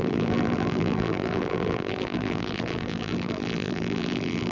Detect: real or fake fake